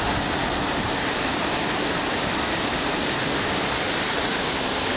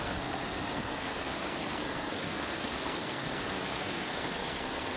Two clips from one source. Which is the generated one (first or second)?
second